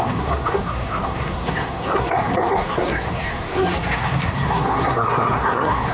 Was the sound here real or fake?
fake